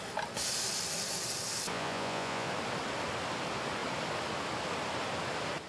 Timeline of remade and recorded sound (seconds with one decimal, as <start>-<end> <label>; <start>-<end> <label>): 0.0-1.7 recorded; 1.7-2.5 remade; 2.5-5.7 recorded